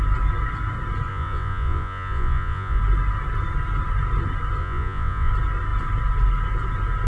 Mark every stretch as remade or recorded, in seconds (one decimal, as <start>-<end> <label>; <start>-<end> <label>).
0.0-1.1 recorded; 1.1-2.8 remade; 2.8-4.6 recorded; 4.6-5.3 remade; 5.3-7.1 recorded